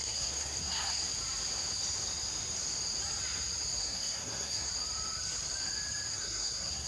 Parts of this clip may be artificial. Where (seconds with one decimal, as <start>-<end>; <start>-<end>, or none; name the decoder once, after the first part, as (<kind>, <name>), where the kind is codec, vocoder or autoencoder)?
0.0-1.0 (codec, SNAC); 3.8-4.7; 6.1-6.9